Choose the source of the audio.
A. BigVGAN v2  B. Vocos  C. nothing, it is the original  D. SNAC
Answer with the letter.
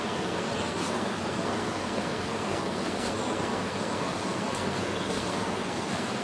D